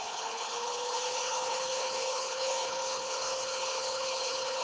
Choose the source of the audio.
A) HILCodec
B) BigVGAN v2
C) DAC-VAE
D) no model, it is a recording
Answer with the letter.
A